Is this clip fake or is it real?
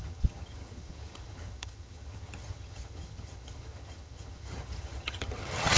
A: fake